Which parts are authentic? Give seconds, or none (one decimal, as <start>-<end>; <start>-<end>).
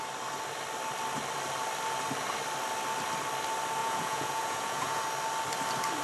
0.0-3.8; 5.0-6.0